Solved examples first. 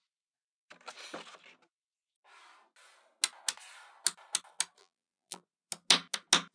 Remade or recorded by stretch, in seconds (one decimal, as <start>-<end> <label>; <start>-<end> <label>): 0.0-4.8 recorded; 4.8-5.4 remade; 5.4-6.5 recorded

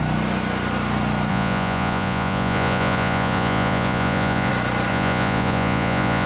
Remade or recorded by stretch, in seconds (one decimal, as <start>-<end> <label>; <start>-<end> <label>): 0.0-1.3 recorded; 1.3-4.5 remade; 4.5-4.9 recorded; 4.9-6.3 remade

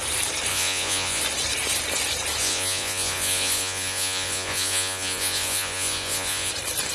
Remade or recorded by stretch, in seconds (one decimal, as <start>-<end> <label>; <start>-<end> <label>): 0.0-0.5 recorded; 0.5-1.2 remade; 1.2-2.4 recorded; 2.4-6.5 remade; 6.5-6.9 recorded